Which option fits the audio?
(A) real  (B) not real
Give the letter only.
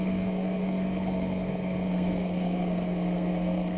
B